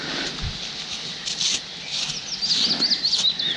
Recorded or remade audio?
recorded